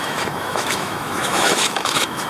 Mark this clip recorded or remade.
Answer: remade